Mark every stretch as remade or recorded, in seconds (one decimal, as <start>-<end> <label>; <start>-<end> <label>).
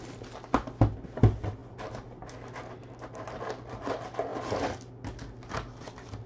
0.0-6.3 recorded